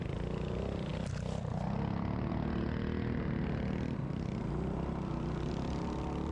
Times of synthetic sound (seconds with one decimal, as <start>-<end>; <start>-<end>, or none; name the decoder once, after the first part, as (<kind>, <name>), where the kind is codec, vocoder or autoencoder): none